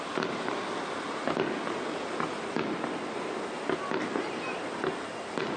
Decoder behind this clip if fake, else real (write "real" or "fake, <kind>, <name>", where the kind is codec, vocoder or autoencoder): real